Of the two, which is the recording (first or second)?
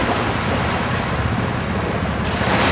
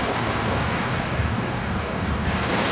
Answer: first